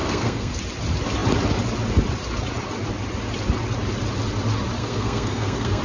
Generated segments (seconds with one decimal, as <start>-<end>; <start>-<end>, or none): 0.0-0.6; 4.8-5.8